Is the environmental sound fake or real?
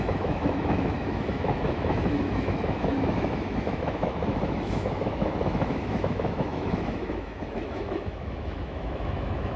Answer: fake